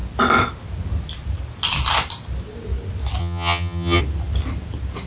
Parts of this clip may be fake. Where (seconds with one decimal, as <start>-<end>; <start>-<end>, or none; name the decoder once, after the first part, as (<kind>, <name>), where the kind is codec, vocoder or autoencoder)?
3.2-4.0 (vocoder, HiFi-GAN)